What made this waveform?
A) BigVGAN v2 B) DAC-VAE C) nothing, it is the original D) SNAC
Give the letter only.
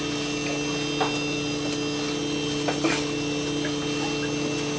C